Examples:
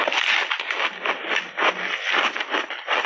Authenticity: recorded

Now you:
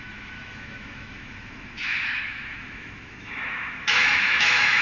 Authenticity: remade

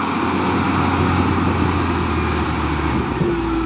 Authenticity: recorded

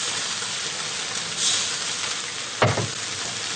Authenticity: recorded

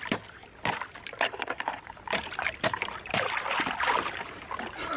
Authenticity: recorded